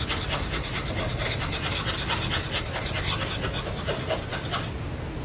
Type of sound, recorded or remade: recorded